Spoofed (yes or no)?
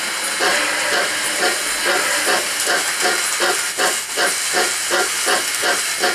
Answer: no